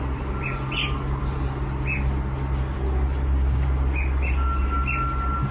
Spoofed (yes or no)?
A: no